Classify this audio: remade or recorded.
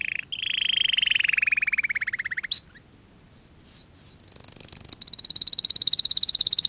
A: recorded